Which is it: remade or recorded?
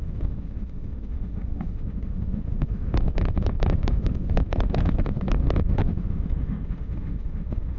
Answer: remade